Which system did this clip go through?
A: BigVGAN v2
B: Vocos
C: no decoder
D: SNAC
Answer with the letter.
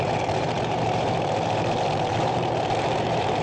A